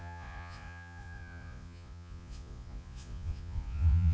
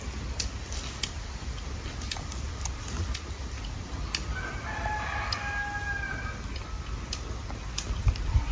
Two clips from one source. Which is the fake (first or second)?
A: first